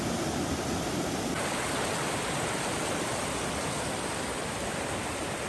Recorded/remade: recorded